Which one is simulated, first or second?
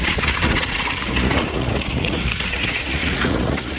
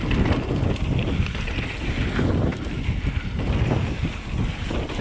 first